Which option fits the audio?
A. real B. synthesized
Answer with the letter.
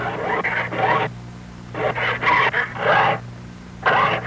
A